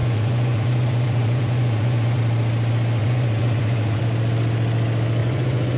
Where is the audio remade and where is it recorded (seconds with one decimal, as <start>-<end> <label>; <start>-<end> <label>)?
0.0-2.2 remade; 2.2-3.0 recorded; 3.0-4.0 remade; 4.0-5.2 recorded; 5.2-5.8 remade